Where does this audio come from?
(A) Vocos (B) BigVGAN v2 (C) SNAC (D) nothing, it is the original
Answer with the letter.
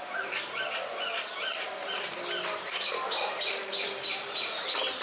D